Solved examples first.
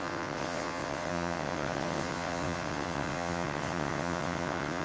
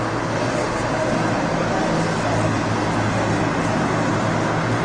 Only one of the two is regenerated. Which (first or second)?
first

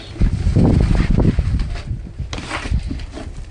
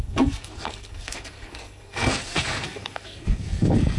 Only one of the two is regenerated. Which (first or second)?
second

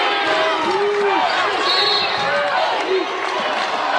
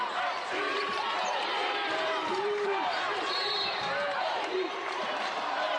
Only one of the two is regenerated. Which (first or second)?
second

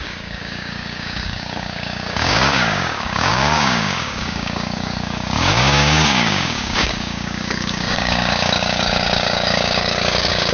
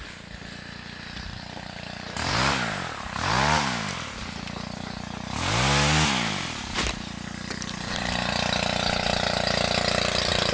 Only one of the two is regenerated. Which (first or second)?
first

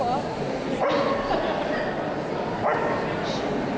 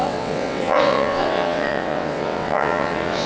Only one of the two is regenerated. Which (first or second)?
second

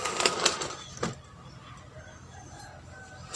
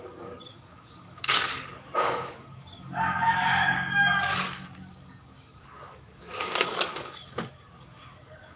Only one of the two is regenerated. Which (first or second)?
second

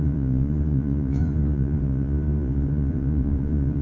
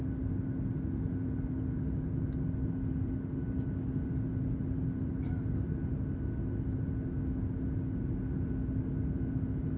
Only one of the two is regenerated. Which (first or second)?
first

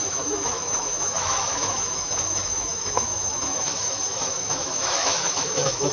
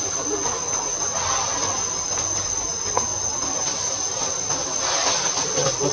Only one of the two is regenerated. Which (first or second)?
first